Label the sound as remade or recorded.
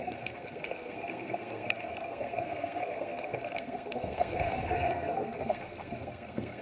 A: remade